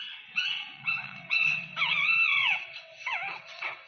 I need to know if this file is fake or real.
fake